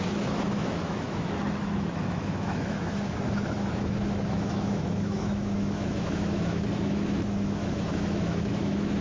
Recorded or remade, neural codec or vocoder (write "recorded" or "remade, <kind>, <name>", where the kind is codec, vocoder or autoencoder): remade, autoencoder, DAC-VAE